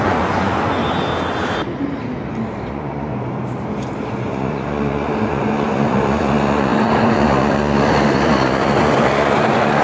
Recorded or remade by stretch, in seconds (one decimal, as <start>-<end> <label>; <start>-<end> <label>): 0.0-0.8 remade; 0.8-2.7 recorded; 2.7-3.1 remade; 3.1-4.1 recorded; 4.1-9.8 remade

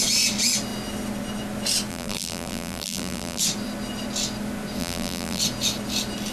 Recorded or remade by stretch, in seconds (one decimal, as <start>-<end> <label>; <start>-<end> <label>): 0.0-1.9 recorded; 1.9-3.4 remade; 3.4-4.8 recorded; 4.8-5.4 remade; 5.4-6.3 recorded